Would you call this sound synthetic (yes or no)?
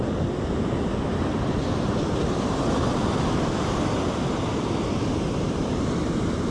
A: no